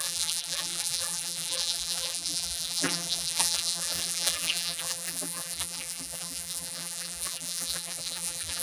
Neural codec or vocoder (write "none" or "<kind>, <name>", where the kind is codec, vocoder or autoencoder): vocoder, BigVGAN v2